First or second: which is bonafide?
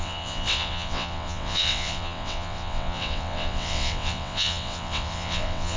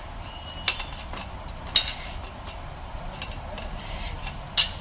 second